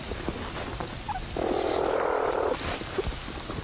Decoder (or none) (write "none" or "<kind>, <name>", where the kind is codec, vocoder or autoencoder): none